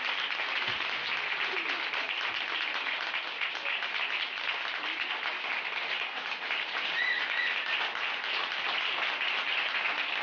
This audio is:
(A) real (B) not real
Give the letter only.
A